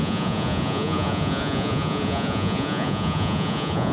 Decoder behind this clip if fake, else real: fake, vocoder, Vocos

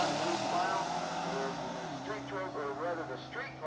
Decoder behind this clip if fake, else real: real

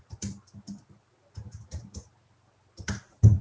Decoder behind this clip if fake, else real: real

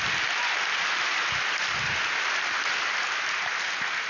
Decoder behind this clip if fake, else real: real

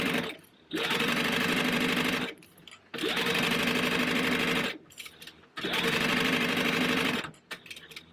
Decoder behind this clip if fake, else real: fake, vocoder, BigVGAN v2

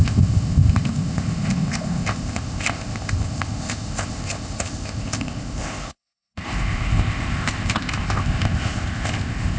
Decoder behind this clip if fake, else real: fake, codec, ZipCodec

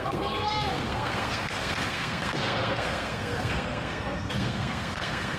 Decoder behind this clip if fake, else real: fake, codec, SNAC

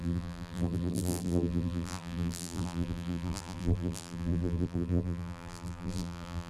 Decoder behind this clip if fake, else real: fake, vocoder, BigVGAN v2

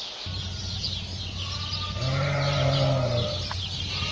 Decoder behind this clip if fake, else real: real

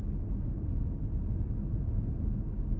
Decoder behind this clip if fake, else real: real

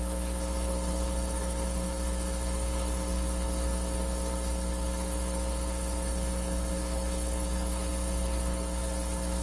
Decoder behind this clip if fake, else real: fake, codec, HILCodec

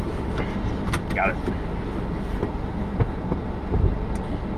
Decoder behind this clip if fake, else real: real